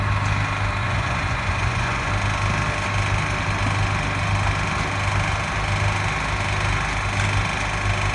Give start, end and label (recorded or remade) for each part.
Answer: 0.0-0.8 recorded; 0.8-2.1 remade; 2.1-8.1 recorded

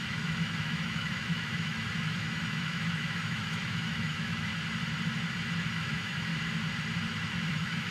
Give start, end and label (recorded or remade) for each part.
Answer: 0.0-4.5 remade; 4.5-5.7 recorded; 5.7-6.3 remade; 6.3-7.5 recorded; 7.5-7.9 remade

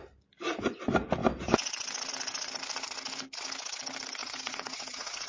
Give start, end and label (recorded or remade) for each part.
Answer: 0.0-4.2 recorded; 4.2-5.3 remade

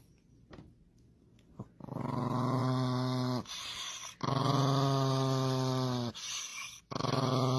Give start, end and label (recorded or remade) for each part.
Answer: 0.0-7.6 recorded

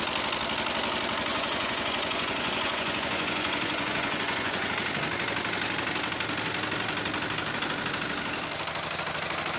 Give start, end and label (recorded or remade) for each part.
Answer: 0.0-1.3 recorded; 1.3-4.7 remade; 4.7-9.6 recorded